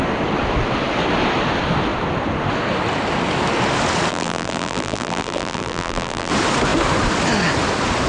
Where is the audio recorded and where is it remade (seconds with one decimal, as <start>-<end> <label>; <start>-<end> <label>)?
0.0-4.1 recorded; 4.1-6.3 remade; 6.3-8.1 recorded